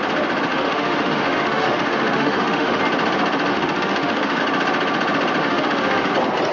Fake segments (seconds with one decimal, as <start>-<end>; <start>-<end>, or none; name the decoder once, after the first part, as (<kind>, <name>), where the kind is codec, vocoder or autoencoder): 0.5-2.8 (autoencoder, DAC-VAE); 3.5-4.4; 5.4-6.1